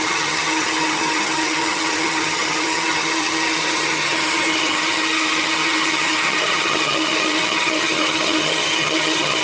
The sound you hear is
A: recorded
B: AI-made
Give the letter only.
B